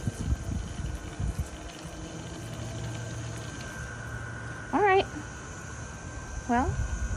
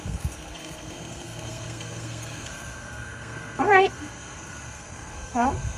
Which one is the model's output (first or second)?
second